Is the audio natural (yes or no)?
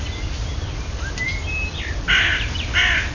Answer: yes